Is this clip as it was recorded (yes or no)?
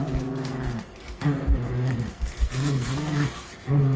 no